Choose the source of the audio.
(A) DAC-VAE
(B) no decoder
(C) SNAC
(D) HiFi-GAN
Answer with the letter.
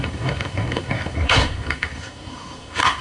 C